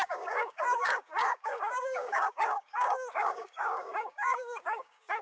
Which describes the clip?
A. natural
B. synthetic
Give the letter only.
B